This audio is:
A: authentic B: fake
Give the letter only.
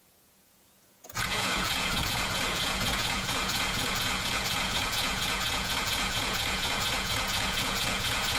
B